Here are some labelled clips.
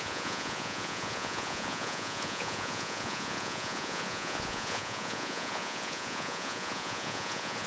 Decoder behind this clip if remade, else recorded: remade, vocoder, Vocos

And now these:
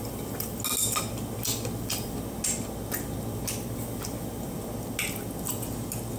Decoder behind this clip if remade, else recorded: recorded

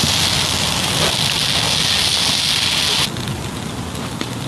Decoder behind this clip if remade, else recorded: recorded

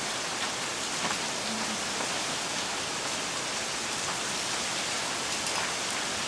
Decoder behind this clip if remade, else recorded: recorded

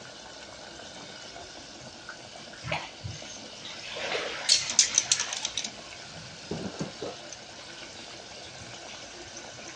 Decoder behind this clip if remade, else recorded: recorded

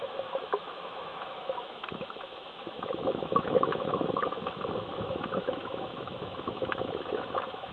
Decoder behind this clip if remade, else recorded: remade, autoencoder, DAC-VAE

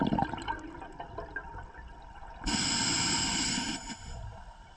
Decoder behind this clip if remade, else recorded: recorded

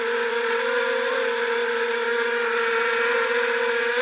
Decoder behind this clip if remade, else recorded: remade, vocoder, Vocos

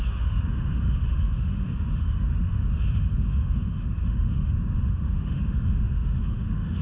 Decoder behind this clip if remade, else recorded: remade, autoencoder, DAC-VAE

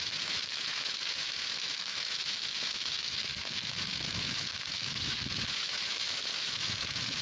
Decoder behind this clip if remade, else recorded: remade, autoencoder, DAC-VAE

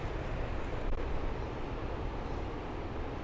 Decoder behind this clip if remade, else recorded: recorded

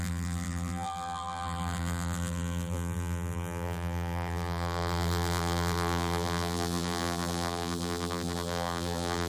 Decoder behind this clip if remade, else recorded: remade, vocoder, BigVGAN v2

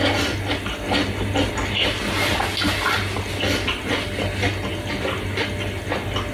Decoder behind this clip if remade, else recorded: recorded